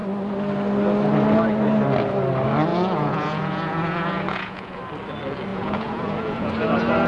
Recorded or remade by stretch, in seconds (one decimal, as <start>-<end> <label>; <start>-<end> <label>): 0.0-2.7 recorded; 2.7-4.8 remade; 4.8-5.5 recorded; 5.5-6.5 remade; 6.5-7.1 recorded